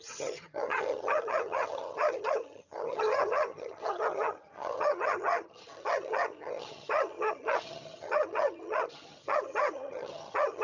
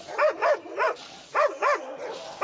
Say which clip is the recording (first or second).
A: second